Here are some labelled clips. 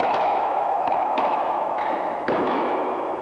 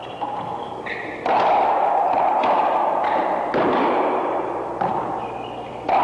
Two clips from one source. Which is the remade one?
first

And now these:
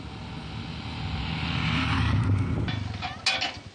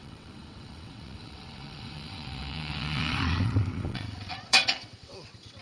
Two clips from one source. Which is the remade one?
second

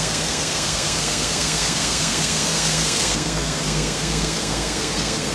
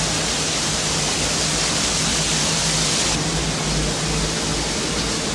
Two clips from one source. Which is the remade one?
first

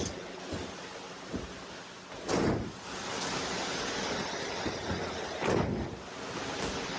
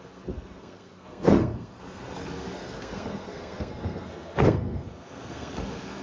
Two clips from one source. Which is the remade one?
second